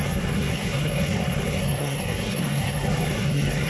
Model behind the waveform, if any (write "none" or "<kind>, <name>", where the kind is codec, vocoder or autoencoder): codec, SNAC